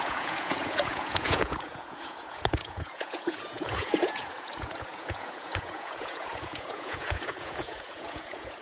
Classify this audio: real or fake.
fake